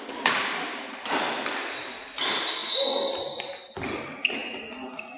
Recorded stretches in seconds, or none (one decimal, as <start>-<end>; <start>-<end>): 0.0-5.2

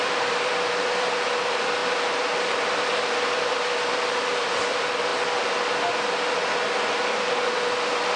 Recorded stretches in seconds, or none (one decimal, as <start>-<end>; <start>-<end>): 5.1-7.7

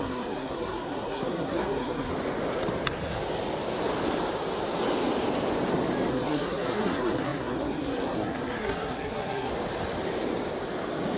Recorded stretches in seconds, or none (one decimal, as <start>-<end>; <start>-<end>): 2.1-6.1; 9.5-11.2

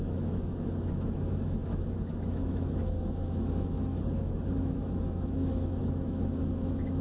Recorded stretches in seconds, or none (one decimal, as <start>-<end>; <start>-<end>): none